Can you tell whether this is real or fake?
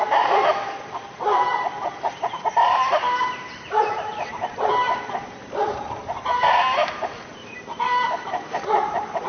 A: fake